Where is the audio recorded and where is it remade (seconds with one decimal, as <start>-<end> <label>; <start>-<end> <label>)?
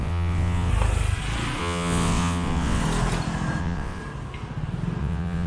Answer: 0.0-0.7 remade; 0.7-1.6 recorded; 1.6-2.8 remade; 2.8-3.6 recorded; 3.6-4.0 remade; 4.0-5.0 recorded; 5.0-5.5 remade